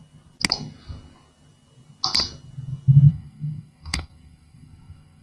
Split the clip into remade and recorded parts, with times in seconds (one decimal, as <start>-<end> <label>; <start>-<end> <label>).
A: 0.0-3.1 recorded; 3.1-5.2 remade

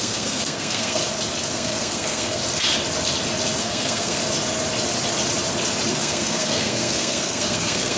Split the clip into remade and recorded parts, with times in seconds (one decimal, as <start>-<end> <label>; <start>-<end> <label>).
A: 0.0-1.0 remade; 1.0-1.5 recorded; 1.5-2.4 remade; 2.4-3.6 recorded; 3.6-4.2 remade; 4.2-5.9 recorded; 5.9-8.0 remade

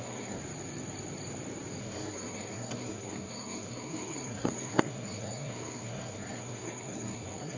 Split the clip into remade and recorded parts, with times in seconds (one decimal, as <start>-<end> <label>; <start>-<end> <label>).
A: 0.0-0.4 remade; 0.4-1.8 recorded; 1.8-7.6 remade